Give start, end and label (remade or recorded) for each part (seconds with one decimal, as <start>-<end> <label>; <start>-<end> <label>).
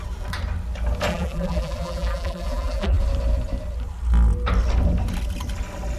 0.0-1.1 recorded; 1.1-3.0 remade; 3.0-6.0 recorded